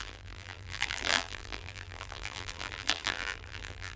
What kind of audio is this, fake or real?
fake